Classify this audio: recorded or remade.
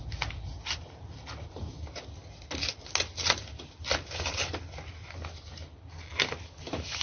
recorded